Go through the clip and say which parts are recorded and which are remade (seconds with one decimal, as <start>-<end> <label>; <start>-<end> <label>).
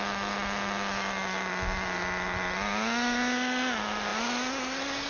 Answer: 0.0-5.1 recorded